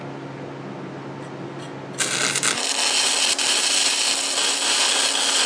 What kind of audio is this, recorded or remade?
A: recorded